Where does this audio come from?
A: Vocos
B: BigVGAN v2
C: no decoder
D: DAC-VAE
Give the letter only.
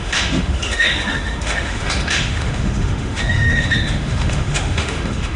D